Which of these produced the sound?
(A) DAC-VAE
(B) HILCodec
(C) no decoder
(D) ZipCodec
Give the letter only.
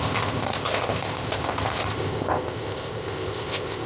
D